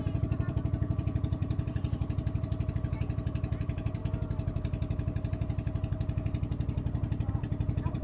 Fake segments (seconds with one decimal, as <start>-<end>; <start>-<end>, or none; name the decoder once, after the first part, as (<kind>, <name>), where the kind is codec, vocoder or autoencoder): 0.0-4.0 (vocoder, BigVGAN v2); 7.3-8.0